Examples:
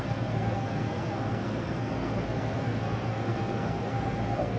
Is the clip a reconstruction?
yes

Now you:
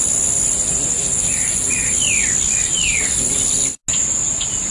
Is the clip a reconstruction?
no